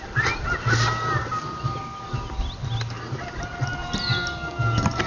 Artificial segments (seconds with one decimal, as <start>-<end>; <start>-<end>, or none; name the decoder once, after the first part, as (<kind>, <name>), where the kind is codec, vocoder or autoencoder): none